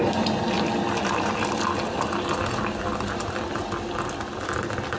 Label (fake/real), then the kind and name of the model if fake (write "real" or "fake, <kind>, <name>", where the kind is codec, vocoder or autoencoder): real